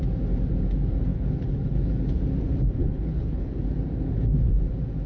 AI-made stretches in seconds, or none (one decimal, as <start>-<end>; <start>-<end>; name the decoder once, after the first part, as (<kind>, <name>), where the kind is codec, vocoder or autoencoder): 1.1-2.2 (codec, HILCodec); 2.8-3.5